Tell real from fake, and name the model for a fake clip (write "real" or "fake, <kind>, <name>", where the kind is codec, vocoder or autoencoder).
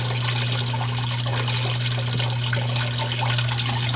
real